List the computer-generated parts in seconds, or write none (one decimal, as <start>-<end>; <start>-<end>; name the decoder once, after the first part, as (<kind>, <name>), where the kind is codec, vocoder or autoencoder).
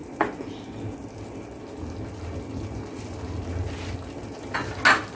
none